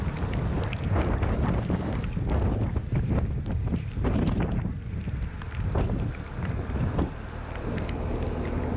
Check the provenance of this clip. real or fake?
real